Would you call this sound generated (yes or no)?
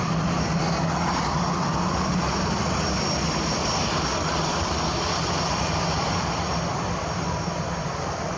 no